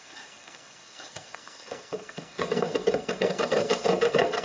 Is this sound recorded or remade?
remade